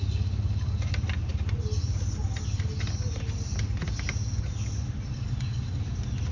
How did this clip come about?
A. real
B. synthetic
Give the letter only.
A